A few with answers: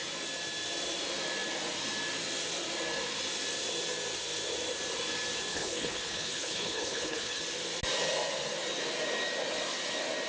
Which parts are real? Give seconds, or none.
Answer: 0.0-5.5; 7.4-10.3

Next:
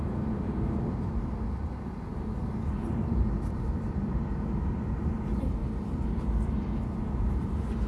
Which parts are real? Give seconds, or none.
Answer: 5.6-7.0

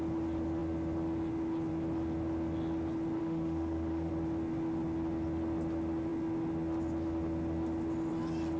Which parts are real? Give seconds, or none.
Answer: 0.0-3.2; 4.1-8.6

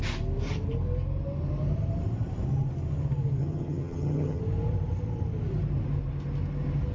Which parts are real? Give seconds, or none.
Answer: 0.0-3.4; 4.4-6.9

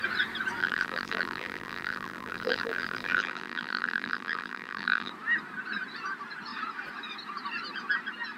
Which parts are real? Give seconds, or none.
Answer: 0.0-0.6; 5.1-8.4

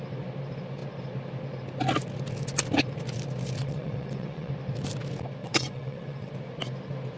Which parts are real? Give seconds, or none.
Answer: 0.0-3.6; 4.5-5.4; 6.3-7.2

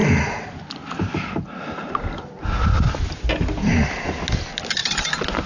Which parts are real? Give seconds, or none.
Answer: 0.0-5.5

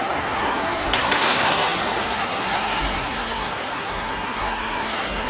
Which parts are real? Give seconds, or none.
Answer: none